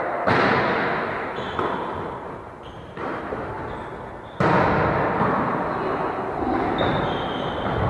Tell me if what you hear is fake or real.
real